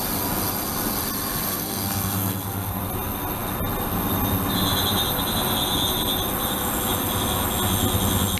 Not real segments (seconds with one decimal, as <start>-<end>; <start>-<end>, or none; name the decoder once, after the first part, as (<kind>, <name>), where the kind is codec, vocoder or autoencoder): 1.5-2.8 (codec, SNAC)